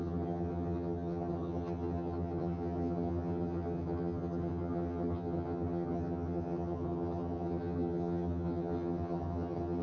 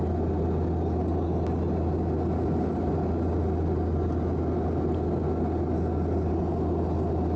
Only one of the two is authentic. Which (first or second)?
second